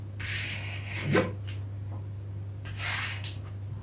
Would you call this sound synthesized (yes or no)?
no